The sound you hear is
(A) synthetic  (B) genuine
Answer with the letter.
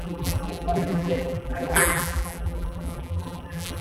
A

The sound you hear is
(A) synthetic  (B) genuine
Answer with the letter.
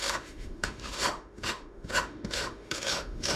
A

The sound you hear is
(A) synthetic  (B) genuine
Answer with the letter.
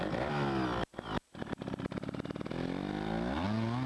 B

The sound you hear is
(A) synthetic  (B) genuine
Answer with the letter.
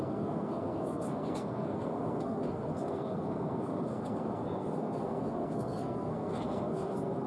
A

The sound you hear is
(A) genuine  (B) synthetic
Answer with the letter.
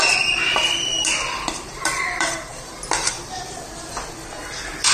B